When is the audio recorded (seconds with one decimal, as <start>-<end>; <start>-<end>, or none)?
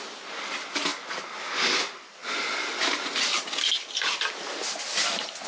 0.0-5.5